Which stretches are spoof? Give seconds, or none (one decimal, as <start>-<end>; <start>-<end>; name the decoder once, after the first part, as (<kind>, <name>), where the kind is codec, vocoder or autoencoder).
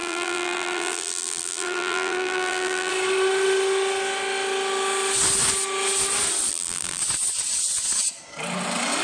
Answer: 0.0-2.9 (vocoder, BigVGAN v2); 6.5-7.0